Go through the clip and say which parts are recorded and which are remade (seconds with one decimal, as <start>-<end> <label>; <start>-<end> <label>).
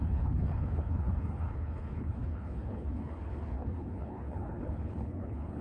0.0-5.6 remade